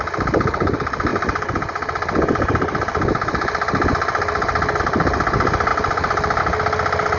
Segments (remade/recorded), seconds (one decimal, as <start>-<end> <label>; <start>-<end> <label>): 0.0-7.2 recorded